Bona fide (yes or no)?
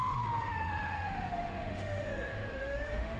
no